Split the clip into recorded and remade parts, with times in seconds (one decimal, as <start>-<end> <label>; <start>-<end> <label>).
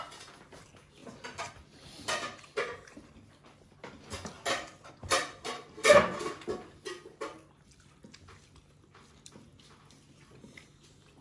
0.0-11.2 recorded